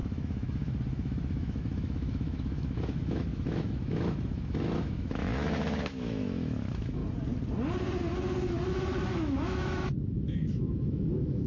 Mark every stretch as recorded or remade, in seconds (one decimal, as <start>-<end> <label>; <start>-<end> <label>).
0.0-7.0 remade; 7.0-8.7 recorded; 8.7-11.5 remade